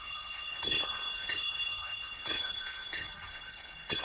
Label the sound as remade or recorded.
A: remade